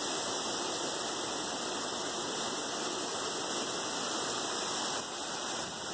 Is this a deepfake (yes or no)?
no